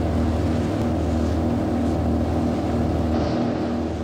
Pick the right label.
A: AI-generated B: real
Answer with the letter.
B